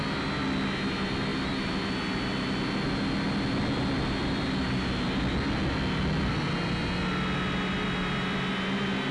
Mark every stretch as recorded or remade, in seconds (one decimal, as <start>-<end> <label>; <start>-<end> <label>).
0.0-9.1 recorded